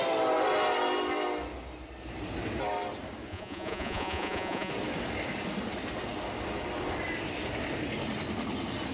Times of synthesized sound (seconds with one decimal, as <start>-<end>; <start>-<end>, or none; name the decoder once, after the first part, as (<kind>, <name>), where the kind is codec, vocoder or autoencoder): 3.3-4.7 (vocoder, Vocos)